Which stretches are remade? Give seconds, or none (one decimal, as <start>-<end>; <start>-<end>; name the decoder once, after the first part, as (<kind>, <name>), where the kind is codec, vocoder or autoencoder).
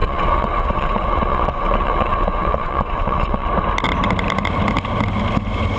0.0-3.5 (vocoder, WaveNeXt)